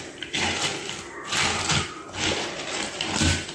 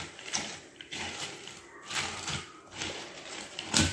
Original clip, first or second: first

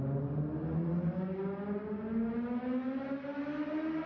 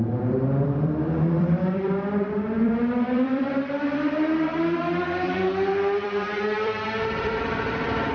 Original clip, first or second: first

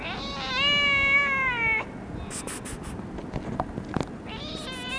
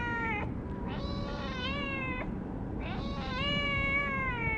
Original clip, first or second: first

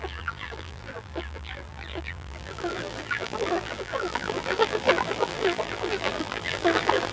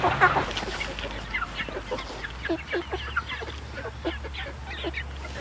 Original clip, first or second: second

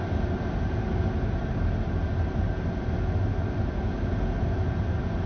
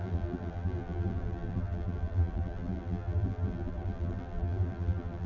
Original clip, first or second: first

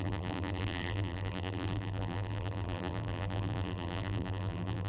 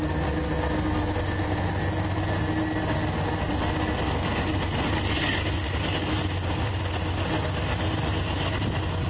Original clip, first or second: second